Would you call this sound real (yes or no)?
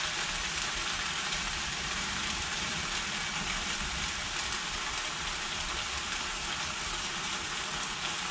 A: no